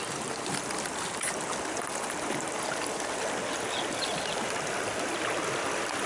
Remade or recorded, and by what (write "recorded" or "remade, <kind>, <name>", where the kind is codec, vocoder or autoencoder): recorded